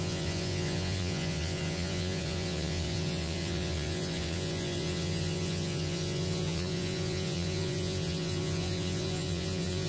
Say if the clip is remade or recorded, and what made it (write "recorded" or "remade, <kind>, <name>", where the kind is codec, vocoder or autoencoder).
remade, vocoder, Vocos